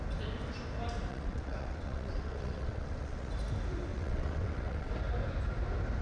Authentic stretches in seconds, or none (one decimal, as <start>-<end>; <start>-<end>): 0.0-1.1; 3.3-3.9; 4.9-6.0